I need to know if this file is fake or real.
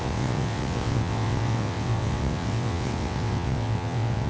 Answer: fake